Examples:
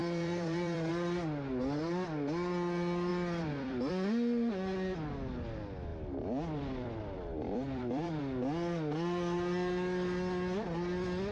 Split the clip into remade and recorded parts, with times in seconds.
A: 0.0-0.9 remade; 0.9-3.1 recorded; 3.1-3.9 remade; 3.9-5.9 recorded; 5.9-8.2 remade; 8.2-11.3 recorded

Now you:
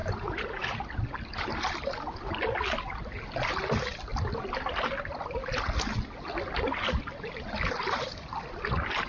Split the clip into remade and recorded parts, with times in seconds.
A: 0.0-0.8 remade; 0.8-9.1 recorded

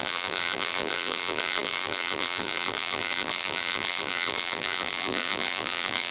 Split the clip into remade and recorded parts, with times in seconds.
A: 0.0-6.1 remade